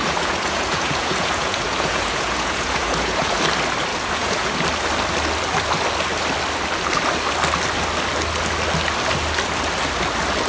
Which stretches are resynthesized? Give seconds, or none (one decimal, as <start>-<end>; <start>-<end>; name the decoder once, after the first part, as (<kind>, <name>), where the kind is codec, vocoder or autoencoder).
0.0-3.4 (vocoder, Vocos); 3.9-4.5